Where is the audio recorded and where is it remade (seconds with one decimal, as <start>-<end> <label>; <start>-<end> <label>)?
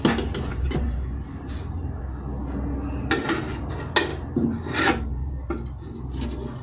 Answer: 0.0-0.5 recorded; 0.5-2.0 remade; 2.0-4.1 recorded; 4.1-5.5 remade; 5.5-6.6 recorded